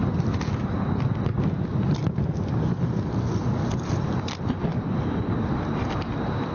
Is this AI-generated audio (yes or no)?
no